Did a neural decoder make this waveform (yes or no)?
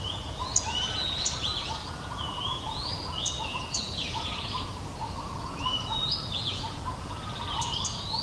yes